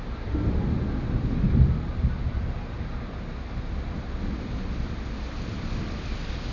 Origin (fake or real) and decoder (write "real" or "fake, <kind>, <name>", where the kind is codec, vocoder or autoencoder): real